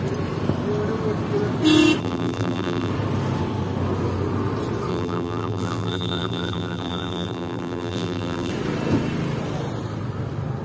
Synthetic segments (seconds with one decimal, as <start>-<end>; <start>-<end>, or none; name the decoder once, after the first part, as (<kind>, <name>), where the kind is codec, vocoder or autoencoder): 2.0-2.9 (vocoder, BigVGAN v2); 4.9-8.5